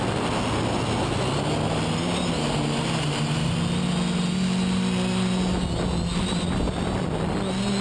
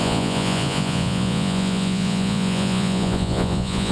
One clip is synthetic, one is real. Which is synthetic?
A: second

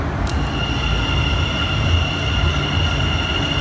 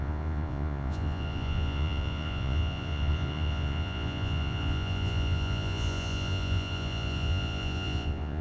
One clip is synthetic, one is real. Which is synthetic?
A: second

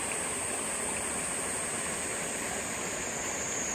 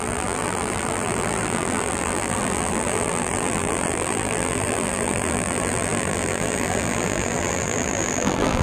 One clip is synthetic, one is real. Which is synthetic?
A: second